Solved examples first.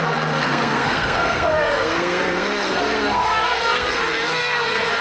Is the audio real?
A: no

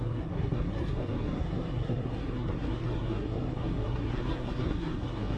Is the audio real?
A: no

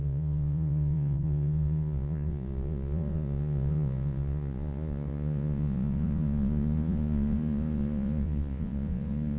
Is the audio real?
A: no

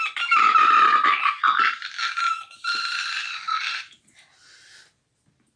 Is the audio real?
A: yes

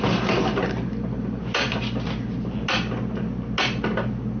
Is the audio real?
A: yes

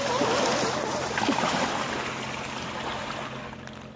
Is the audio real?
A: yes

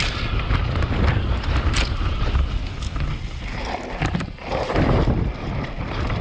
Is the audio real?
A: yes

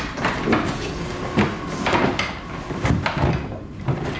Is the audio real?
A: yes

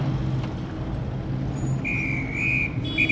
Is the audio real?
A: yes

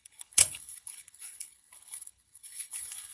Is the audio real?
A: no